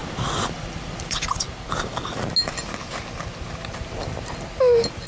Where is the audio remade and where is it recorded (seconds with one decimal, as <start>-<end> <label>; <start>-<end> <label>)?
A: 0.0-1.1 remade; 1.1-5.1 recorded